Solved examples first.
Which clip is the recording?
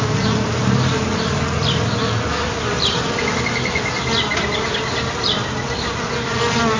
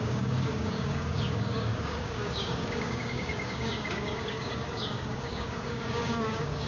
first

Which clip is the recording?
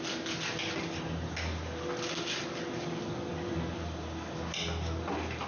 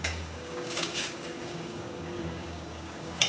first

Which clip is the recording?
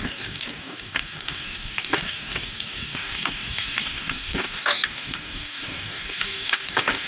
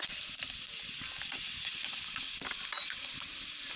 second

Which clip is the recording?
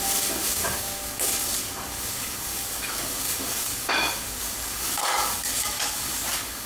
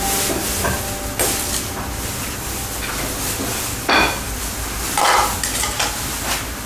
second